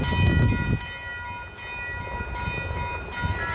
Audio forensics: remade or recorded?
recorded